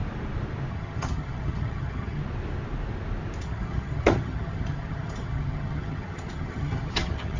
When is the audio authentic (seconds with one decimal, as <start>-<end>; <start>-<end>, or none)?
0.0-0.7; 2.2-3.4